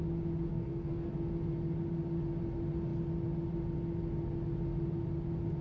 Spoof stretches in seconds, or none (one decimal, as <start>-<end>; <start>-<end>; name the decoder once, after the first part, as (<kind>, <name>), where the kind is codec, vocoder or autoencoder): 0.5-1.1 (codec, SNAC)